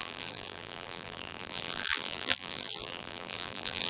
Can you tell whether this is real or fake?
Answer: fake